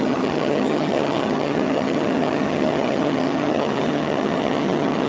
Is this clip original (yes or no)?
no